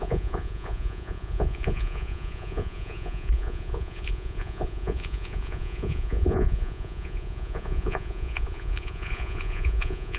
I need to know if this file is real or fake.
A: fake